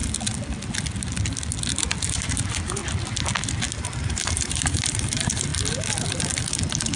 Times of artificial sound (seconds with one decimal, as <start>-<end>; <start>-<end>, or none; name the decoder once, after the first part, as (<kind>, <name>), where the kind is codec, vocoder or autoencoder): 2.0-2.8 (vocoder, BigVGAN v2); 4.0-5.5